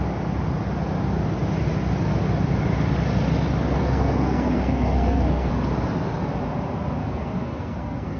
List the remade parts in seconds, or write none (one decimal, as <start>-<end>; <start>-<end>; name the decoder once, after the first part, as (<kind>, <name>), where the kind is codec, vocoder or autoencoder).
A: 3.8-5.5 (codec, SNAC); 7.0-8.2